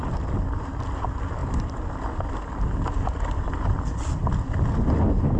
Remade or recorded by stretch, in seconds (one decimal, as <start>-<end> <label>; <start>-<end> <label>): 0.0-5.4 recorded